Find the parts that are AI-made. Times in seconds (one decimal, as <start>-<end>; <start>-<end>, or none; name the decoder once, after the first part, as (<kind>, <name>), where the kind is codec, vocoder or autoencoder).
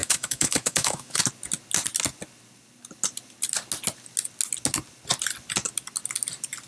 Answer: 0.0-1.2 (autoencoder, DAC-VAE)